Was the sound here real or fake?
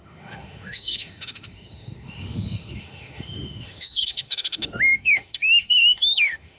fake